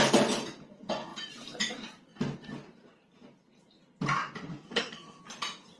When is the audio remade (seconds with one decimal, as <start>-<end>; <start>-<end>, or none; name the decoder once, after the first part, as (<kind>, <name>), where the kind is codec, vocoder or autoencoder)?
4.5-5.2 (codec, SNAC)